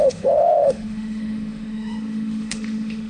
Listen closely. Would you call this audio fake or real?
fake